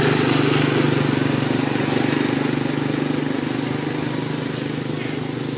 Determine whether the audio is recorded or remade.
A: recorded